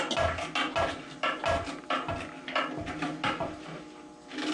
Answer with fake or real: real